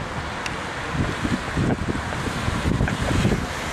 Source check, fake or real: real